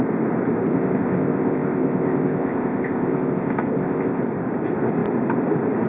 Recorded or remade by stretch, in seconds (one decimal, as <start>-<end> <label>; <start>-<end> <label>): 0.0-0.7 recorded; 0.7-4.2 remade; 4.2-5.9 recorded